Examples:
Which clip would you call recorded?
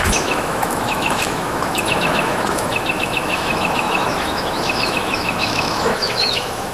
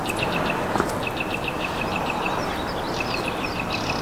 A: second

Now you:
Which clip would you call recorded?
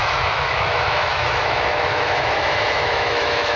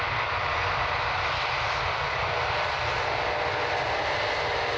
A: second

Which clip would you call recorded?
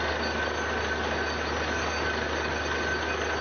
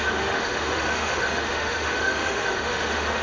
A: first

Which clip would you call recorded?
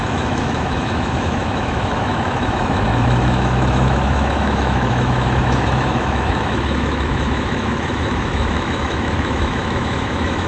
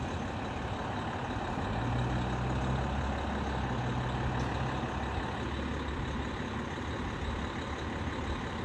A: second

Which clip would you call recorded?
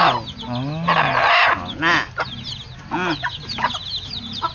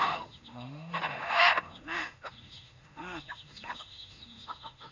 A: first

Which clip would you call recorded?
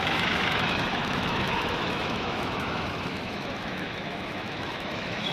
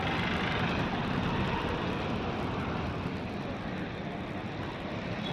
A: second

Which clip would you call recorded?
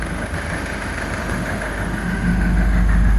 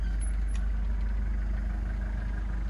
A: second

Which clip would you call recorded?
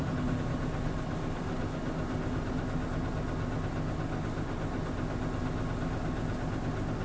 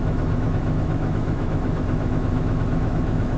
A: first